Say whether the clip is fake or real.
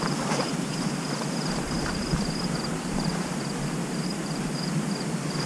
fake